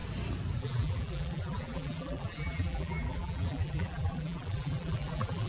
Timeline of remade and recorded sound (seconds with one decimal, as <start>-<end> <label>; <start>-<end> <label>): 0.0-0.6 recorded; 0.6-5.5 remade